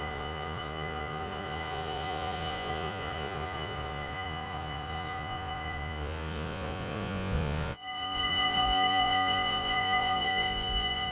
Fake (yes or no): yes